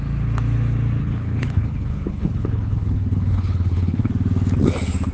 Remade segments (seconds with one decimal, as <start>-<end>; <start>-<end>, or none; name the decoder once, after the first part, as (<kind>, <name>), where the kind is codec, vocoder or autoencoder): 1.0-4.1 (codec, HILCodec)